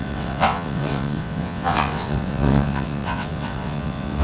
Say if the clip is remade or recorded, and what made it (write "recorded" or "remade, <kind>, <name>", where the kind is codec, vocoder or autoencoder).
remade, vocoder, WaveNeXt